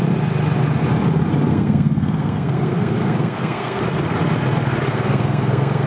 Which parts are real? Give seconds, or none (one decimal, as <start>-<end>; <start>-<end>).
0.0-1.5; 3.8-4.9